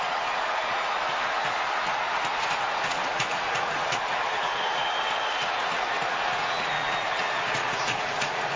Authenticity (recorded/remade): remade